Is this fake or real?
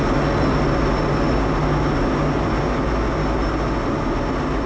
real